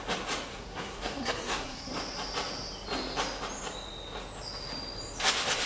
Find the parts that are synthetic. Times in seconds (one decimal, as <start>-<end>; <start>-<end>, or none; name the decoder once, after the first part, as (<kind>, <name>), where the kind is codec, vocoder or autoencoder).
0.5-1.9 (codec, SNAC)